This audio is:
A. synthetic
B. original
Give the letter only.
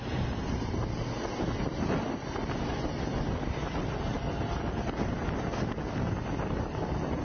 B